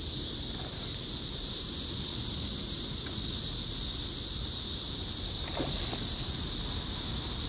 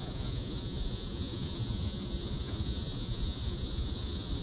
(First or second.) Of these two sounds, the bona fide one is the first